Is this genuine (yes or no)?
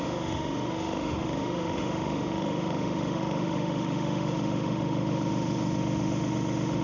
no